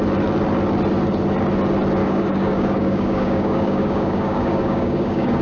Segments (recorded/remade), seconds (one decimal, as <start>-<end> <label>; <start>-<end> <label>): 0.0-2.0 recorded; 2.0-5.4 remade